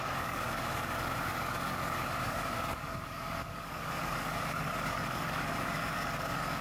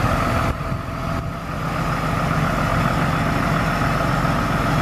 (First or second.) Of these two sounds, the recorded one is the second